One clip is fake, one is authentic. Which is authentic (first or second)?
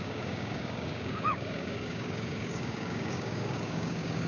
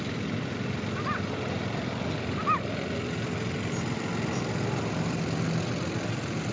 second